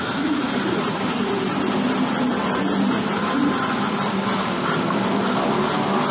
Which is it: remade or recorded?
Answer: recorded